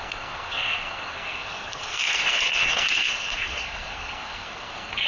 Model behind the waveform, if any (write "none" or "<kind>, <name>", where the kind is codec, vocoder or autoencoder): codec, SNAC